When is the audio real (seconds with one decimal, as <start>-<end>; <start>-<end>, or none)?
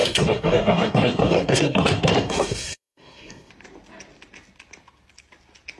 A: 3.5-5.8